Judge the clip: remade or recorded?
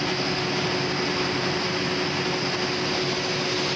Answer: recorded